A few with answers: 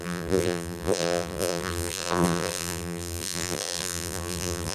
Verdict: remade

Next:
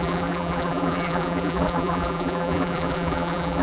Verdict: remade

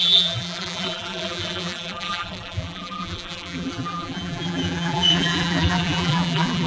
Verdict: remade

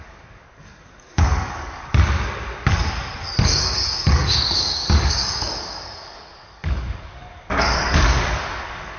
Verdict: remade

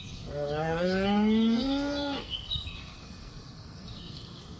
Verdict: remade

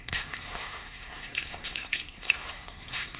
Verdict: remade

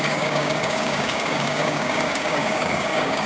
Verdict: remade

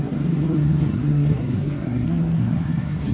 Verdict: remade